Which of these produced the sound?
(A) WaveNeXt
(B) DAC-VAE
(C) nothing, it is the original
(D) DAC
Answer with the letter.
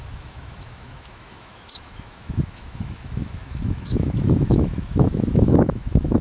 B